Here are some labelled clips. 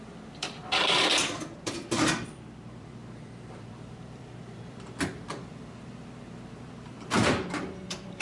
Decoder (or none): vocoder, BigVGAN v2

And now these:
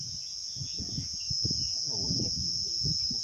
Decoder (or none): vocoder, BigVGAN v2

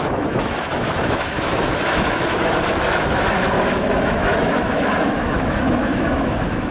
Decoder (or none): autoencoder, DAC-VAE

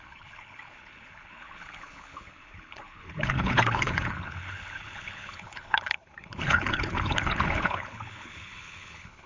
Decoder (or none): codec, HILCodec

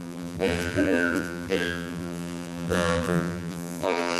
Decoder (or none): vocoder, BigVGAN v2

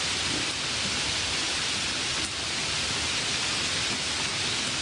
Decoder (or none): none